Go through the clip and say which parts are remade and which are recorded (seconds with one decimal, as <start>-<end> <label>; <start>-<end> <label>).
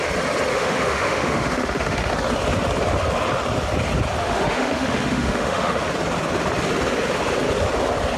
0.0-0.5 recorded; 0.5-2.1 remade; 2.1-4.2 recorded; 4.2-5.9 remade; 5.9-8.2 recorded